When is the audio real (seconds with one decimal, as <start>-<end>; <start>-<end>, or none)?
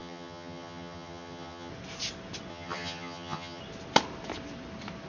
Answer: 1.7-2.5; 3.6-5.1